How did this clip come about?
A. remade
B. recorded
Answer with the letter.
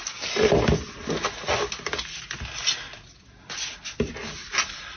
B